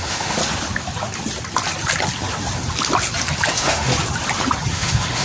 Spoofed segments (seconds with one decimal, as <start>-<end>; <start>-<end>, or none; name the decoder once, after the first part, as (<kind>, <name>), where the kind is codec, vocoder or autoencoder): 0.0-0.4 (autoencoder, DAC-VAE); 3.5-3.9; 4.7-5.2